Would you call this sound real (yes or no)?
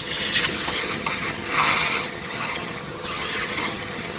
no